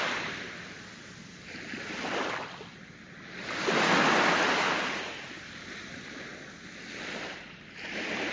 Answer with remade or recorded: recorded